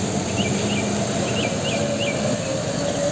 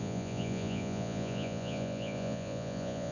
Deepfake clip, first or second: second